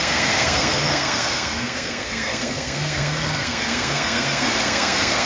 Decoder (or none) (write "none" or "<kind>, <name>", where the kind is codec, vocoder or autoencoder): codec, SNAC